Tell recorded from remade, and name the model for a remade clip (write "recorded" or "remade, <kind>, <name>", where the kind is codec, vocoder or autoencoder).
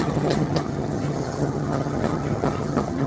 remade, vocoder, HiFi-GAN